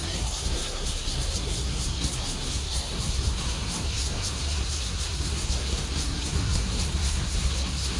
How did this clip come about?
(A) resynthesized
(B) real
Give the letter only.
A